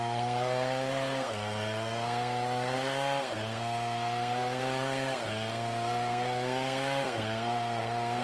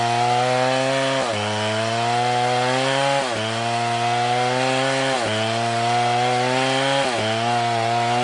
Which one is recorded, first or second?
second